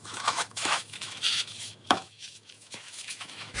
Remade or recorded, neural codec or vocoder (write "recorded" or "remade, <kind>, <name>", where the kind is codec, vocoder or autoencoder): remade, autoencoder, DAC-VAE